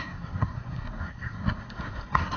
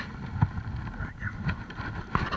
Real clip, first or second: second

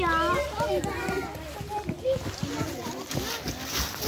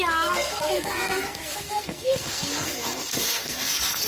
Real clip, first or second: first